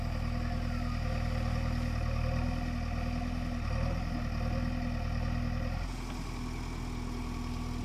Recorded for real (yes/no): yes